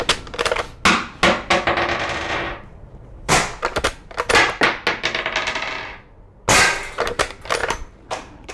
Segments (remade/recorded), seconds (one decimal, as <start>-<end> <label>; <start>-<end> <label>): 0.0-2.3 recorded; 2.3-3.3 remade; 3.3-7.6 recorded; 7.6-8.5 remade